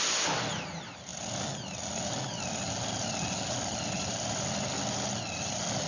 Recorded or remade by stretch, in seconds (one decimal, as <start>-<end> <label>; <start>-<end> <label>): 0.0-5.9 recorded